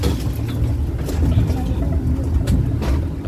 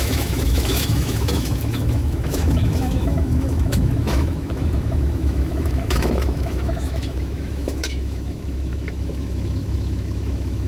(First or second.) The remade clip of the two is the second